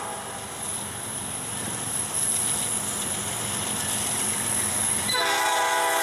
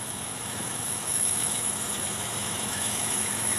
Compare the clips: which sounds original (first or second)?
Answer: first